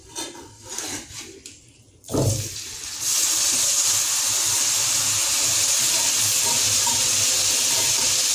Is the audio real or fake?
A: fake